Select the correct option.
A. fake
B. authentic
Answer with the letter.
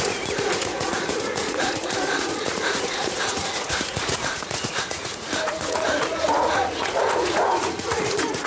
A